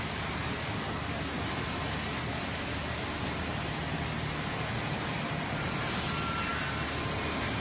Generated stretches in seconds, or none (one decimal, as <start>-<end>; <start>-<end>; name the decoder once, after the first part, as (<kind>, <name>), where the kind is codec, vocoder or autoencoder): none